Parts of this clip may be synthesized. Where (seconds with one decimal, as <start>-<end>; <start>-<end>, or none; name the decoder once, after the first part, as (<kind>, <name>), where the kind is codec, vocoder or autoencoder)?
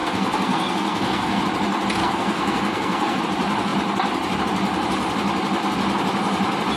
0.0-1.4 (codec, SNAC); 2.0-3.2